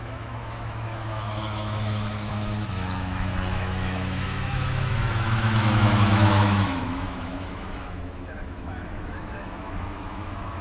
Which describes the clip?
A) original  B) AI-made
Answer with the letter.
B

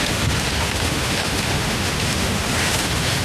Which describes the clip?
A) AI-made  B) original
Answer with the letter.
A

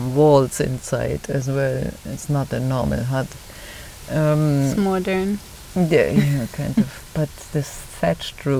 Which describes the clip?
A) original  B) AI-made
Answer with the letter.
A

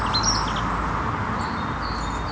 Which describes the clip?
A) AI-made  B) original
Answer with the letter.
B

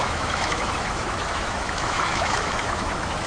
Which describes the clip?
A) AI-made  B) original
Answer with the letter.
A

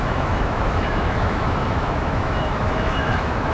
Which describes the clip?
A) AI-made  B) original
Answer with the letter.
A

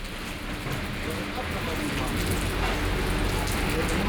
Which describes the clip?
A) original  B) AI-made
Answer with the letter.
A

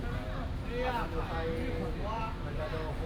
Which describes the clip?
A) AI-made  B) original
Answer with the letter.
B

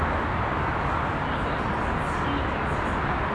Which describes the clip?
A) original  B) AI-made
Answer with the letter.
A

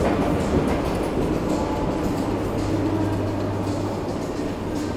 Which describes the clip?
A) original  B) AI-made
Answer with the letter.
A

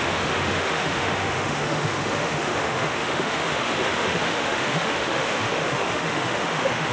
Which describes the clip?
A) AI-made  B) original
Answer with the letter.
A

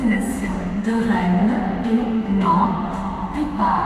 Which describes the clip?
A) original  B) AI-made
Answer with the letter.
B